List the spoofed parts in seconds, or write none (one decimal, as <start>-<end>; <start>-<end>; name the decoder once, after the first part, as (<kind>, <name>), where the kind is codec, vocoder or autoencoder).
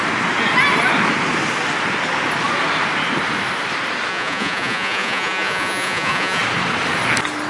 4.1-6.4 (vocoder, Vocos)